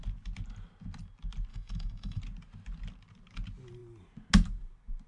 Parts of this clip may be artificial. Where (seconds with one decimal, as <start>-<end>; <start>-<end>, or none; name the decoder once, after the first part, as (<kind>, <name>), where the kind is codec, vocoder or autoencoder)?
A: 1.5-2.2 (autoencoder, DAC-VAE)